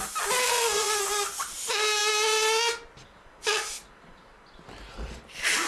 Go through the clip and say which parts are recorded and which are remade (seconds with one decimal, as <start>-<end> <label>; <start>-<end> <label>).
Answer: 0.0-0.4 recorded; 0.4-1.0 remade; 1.0-5.7 recorded